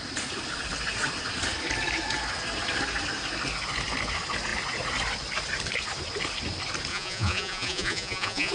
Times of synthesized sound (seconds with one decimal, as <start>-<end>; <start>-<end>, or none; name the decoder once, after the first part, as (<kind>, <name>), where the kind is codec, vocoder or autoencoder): 6.9-8.5 (vocoder, Vocos)